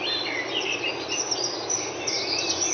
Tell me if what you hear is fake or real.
real